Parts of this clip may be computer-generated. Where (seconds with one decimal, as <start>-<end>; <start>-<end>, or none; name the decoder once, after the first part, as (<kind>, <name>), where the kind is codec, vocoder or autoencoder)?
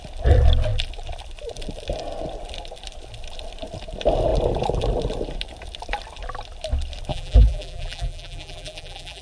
7.1-9.2 (vocoder, BigVGAN v2)